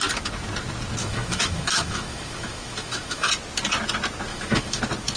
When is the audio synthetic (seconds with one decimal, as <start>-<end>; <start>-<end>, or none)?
1.0-3.3; 4.3-4.8